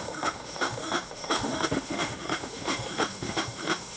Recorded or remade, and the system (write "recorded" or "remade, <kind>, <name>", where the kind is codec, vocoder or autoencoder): remade, autoencoder, DAC-VAE